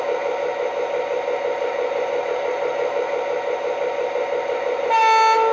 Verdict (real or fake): real